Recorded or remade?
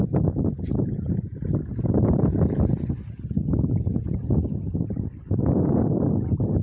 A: recorded